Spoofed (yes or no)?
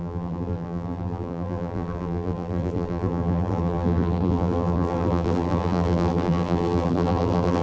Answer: yes